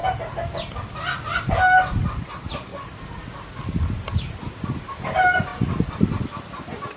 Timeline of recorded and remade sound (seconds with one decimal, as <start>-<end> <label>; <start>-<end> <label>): 0.0-7.0 recorded